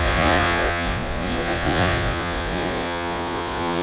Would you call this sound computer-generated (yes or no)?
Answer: yes